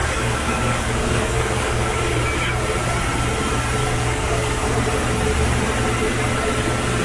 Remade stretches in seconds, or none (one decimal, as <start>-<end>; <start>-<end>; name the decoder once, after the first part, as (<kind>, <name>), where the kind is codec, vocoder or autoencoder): 0.0-2.1 (codec, DAC); 3.8-4.7